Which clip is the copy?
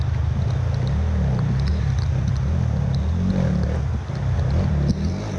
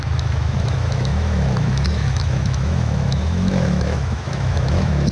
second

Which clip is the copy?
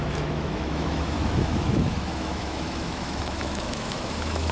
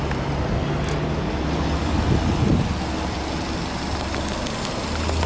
first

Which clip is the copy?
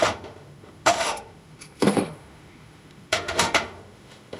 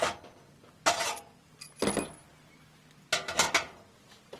first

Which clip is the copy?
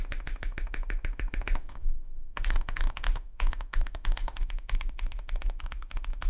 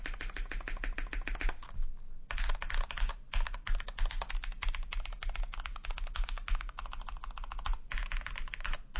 first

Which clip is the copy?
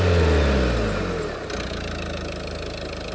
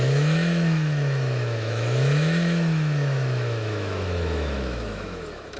second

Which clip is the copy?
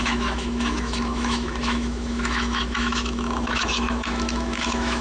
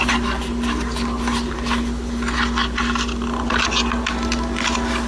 first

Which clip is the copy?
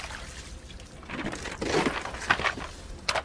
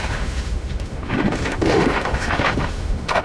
second